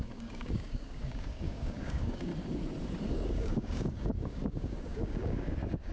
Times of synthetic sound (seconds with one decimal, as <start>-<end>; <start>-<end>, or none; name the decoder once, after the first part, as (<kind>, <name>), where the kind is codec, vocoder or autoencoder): 0.0-2.3 (codec, DAC); 3.1-5.9